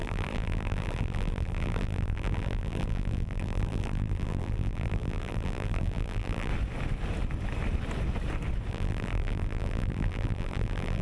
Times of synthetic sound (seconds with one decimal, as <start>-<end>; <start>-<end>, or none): 0.0-6.5; 8.7-11.0